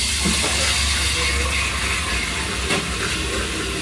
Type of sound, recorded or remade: recorded